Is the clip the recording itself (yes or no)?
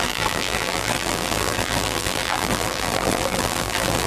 no